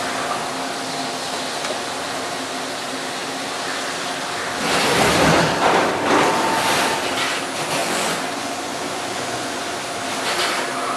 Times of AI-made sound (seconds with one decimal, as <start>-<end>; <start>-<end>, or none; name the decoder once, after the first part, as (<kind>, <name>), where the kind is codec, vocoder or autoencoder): 7.8-9.8 (vocoder, Vocos)